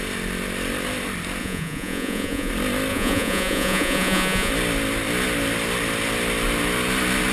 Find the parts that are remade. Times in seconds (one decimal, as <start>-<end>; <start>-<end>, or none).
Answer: 1.4-2.5; 2.9-4.5